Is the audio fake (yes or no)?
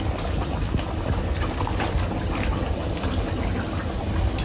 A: no